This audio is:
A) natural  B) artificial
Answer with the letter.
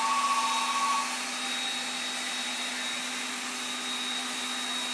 A